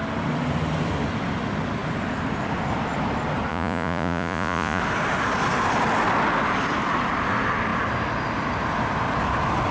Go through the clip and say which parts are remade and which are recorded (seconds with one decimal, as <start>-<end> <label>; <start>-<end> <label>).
0.0-3.5 recorded; 3.5-4.8 remade; 4.8-9.7 recorded